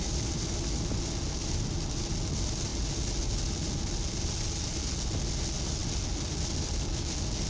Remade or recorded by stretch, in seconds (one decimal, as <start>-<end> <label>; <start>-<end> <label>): 0.0-7.5 recorded